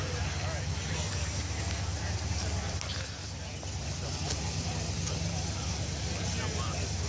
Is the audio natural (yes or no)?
yes